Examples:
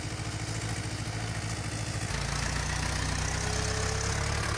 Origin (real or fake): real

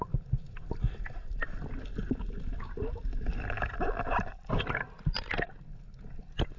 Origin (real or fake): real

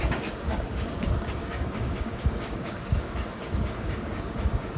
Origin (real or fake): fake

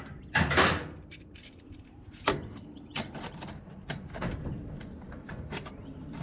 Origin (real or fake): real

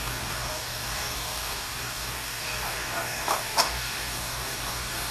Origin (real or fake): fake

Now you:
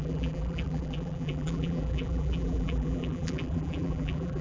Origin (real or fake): fake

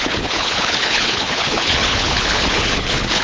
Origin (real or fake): fake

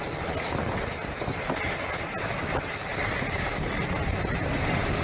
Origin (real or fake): real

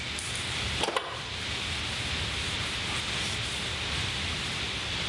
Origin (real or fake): real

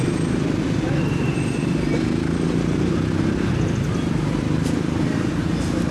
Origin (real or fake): real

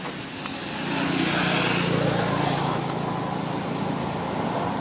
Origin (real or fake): real